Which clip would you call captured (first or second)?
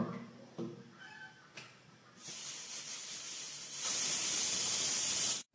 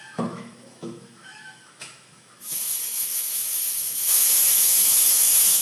first